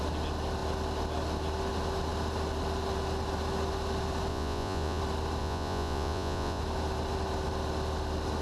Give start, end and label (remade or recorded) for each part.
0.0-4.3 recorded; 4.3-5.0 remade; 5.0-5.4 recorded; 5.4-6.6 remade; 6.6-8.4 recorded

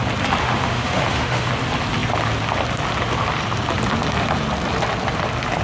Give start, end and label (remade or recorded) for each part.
0.0-0.4 recorded; 0.4-1.5 remade; 1.5-5.6 recorded

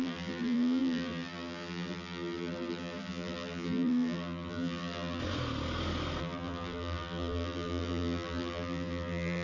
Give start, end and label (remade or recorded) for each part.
0.0-5.2 remade; 5.2-6.2 recorded; 6.2-9.4 remade

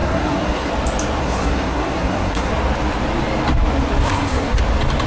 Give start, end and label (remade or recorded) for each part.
0.0-0.7 remade; 0.7-1.2 recorded; 1.2-2.5 remade; 2.5-4.0 recorded; 4.0-4.6 remade; 4.6-5.1 recorded

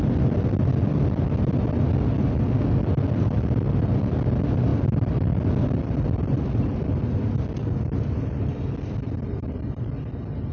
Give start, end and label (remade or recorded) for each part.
0.0-10.5 recorded

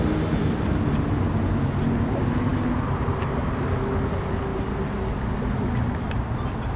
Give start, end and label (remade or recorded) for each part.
0.0-6.8 recorded

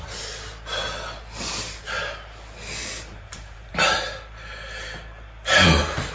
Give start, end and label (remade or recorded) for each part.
0.0-2.8 recorded; 2.8-3.7 remade; 3.7-6.1 recorded

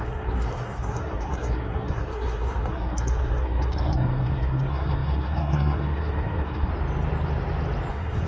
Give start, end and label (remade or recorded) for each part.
0.0-6.7 remade; 6.7-7.9 recorded; 7.9-8.3 remade